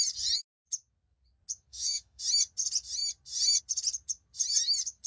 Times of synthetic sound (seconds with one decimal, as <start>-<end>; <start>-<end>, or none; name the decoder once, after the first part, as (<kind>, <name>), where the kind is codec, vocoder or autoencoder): 1.7-2.2 (autoencoder, DAC-VAE)